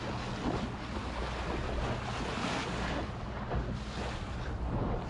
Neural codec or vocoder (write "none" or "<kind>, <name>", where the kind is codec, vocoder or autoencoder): none